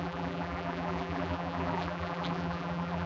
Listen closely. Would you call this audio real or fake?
fake